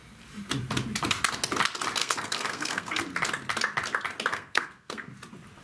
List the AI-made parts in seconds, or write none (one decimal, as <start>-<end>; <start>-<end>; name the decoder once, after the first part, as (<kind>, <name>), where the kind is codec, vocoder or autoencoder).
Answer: 2.0-3.0 (codec, SNAC); 4.3-5.1